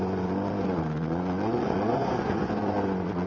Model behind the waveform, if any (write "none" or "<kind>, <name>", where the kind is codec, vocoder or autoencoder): vocoder, Vocos